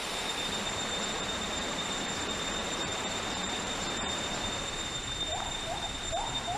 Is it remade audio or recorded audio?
remade